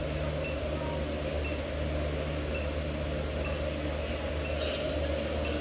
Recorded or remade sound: recorded